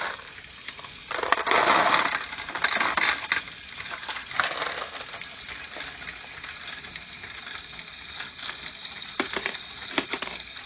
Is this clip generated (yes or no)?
no